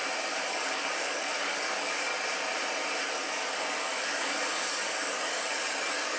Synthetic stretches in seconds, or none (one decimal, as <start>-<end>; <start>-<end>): 0.5-2.1; 3.1-6.2